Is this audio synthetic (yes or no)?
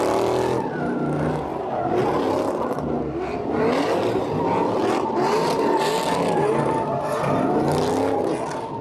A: no